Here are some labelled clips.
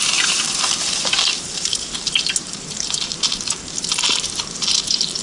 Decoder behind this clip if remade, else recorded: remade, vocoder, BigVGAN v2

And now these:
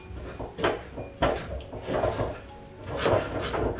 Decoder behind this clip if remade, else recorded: recorded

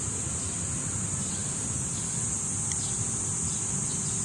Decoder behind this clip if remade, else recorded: recorded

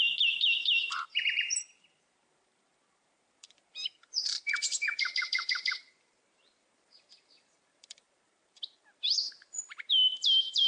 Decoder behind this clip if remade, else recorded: remade, vocoder, BigVGAN v2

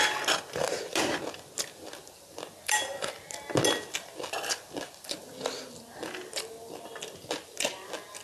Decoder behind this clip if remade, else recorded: recorded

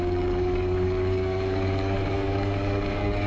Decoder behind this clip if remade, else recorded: remade, codec, DAC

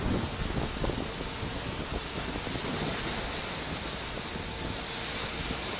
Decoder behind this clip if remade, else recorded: recorded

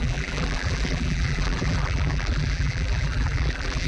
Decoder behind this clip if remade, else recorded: remade, vocoder, BigVGAN v2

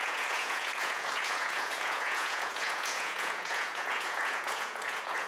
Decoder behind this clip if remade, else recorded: remade, vocoder, Vocos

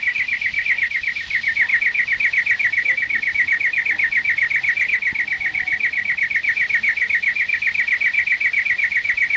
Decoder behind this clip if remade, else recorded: recorded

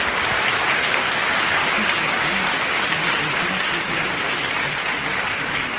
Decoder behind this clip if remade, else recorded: remade, vocoder, BigVGAN v2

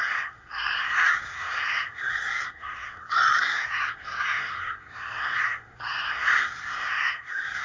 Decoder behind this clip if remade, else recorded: remade, codec, SNAC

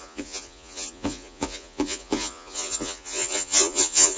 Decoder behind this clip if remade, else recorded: remade, vocoder, Vocos